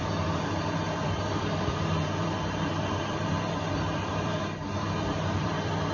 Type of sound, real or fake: fake